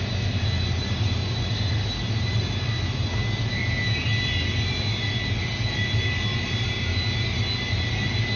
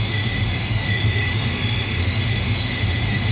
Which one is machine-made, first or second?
second